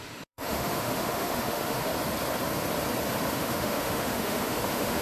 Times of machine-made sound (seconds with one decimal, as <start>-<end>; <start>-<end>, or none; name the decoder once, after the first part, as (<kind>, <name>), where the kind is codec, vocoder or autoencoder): 0.0-1.9 (autoencoder, DAC-VAE); 3.3-5.0